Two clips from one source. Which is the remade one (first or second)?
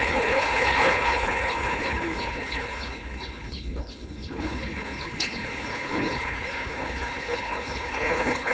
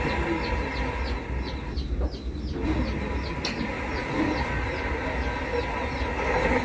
first